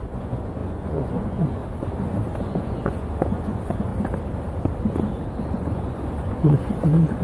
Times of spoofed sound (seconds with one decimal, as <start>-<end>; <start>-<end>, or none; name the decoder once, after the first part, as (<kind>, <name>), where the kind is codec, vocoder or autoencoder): 0.0-1.6 (vocoder, Vocos); 2.4-3.9; 5.4-7.2